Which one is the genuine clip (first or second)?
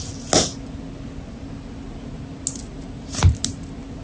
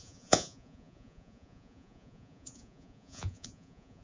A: first